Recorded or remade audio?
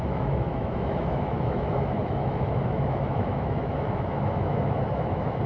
remade